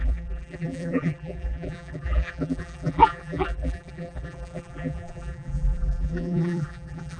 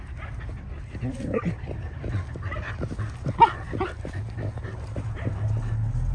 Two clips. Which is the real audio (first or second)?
second